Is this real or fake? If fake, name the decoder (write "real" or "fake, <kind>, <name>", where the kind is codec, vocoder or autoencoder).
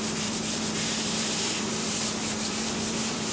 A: fake, vocoder, BigVGAN v2